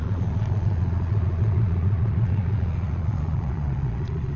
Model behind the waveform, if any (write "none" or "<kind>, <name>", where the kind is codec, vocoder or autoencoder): vocoder, Vocos